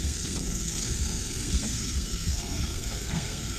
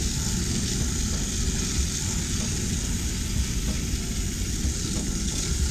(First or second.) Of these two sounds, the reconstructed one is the first